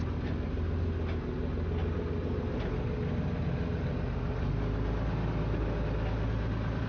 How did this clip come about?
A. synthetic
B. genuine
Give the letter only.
B